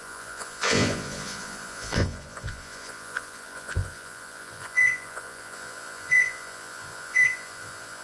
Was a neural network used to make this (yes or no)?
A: yes